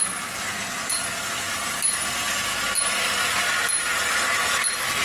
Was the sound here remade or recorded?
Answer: recorded